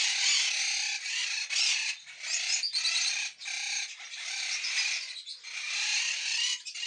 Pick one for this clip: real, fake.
real